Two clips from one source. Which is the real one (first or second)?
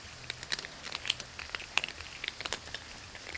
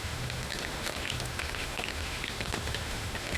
first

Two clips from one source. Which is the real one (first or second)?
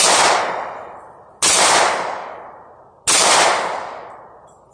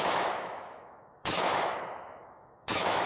first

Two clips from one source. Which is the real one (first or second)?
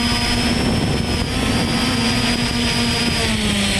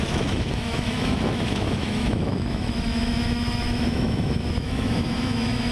first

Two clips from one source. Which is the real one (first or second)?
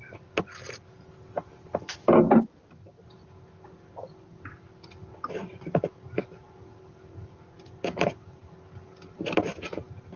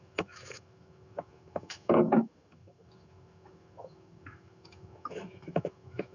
first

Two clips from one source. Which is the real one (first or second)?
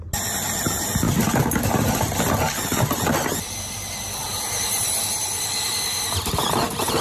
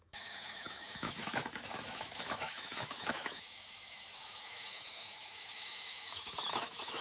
first